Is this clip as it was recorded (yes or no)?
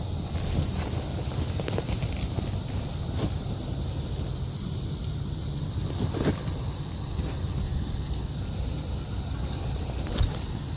yes